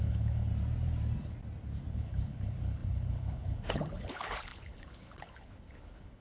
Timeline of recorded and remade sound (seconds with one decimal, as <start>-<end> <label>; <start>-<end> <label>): 0.0-0.5 remade; 0.5-1.9 recorded; 1.9-6.2 remade